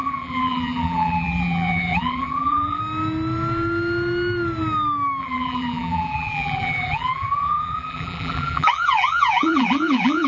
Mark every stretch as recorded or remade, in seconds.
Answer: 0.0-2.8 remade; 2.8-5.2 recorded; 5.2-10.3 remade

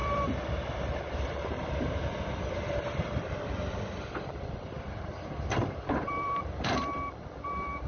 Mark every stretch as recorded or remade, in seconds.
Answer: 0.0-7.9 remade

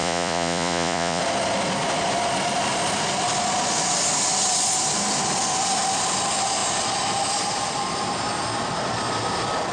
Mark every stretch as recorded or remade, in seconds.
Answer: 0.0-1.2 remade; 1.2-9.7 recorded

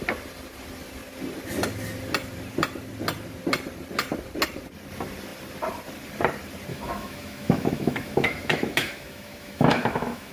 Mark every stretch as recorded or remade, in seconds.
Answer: 0.0-6.7 recorded; 6.7-10.3 remade

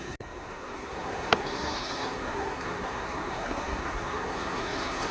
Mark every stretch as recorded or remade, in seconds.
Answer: 0.0-5.1 remade